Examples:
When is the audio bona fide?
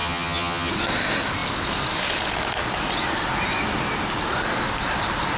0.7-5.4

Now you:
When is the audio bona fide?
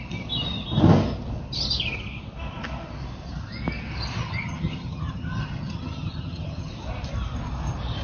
0.0-4.2; 6.7-8.0